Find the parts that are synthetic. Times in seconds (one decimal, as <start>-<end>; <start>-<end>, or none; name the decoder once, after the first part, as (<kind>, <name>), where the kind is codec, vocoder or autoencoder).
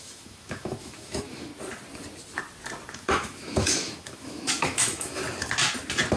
0.0-1.5 (autoencoder, DAC-VAE); 2.9-5.2